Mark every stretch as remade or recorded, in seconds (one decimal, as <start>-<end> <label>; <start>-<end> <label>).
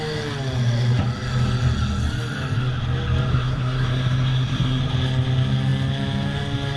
0.0-3.3 recorded; 3.3-4.8 remade; 4.8-6.8 recorded